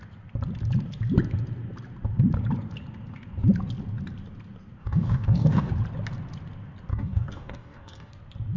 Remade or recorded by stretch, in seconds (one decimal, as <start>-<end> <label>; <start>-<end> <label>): 0.0-4.8 recorded; 4.8-5.7 remade; 5.7-6.9 recorded; 6.9-8.1 remade; 8.1-8.6 recorded